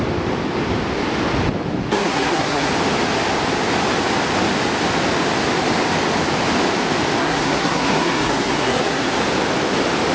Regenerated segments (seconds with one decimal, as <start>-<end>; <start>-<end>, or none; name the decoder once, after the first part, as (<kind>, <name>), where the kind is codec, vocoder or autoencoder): 1.9-2.7 (codec, SNAC); 7.2-9.1